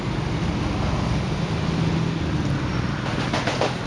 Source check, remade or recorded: recorded